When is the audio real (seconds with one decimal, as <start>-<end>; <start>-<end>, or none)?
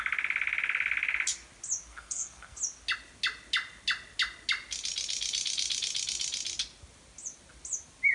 0.0-1.9; 2.6-8.1